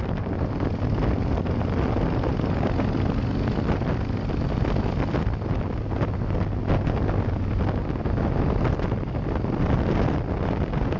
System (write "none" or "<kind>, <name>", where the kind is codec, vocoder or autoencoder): none